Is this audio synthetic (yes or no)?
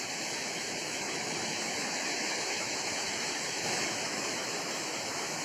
yes